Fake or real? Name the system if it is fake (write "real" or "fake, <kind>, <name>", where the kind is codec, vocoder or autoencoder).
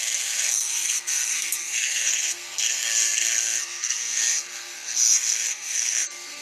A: fake, codec, SNAC